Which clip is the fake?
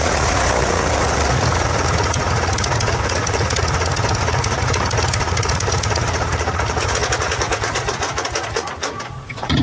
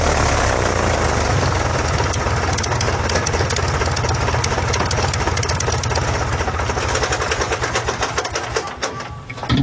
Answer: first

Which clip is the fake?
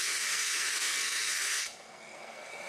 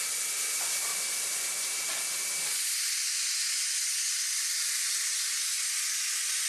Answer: first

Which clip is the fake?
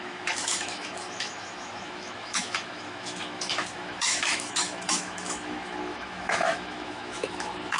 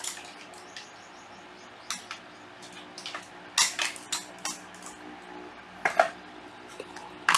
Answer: first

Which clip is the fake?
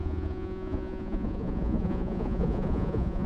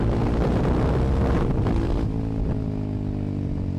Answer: first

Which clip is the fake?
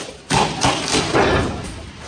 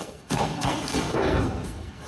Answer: second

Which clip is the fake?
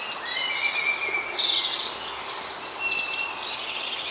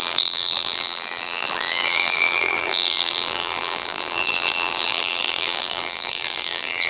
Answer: second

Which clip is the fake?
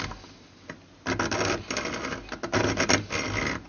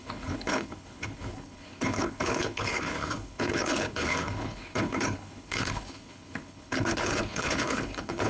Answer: second